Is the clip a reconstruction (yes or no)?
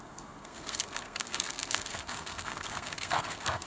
yes